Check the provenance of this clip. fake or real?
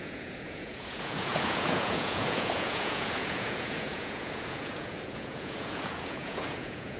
fake